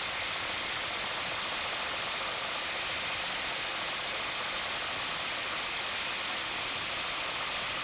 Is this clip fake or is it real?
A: real